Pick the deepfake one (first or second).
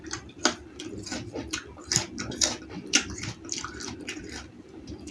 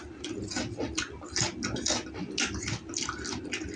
first